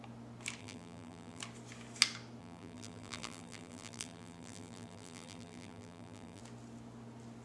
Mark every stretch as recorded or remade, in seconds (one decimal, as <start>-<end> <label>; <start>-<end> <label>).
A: 0.0-0.6 recorded; 0.6-1.4 remade; 1.4-2.4 recorded; 2.4-6.4 remade; 6.4-7.4 recorded